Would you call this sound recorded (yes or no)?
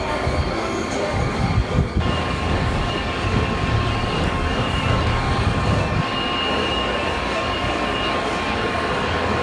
no